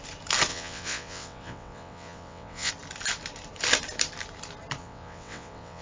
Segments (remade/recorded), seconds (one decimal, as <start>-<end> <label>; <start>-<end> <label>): 0.0-0.5 recorded; 0.5-2.7 remade; 2.7-4.8 recorded; 4.8-5.8 remade